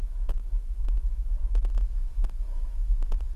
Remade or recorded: remade